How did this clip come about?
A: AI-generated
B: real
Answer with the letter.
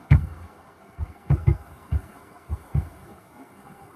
A